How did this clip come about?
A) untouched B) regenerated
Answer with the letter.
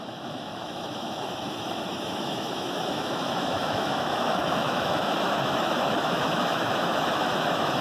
B